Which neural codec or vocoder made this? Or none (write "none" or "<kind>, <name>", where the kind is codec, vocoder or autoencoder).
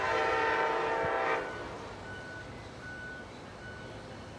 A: none